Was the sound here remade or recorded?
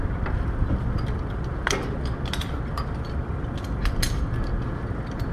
recorded